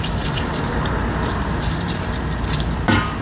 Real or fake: fake